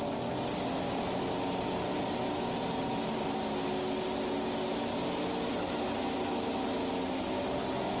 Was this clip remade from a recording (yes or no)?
no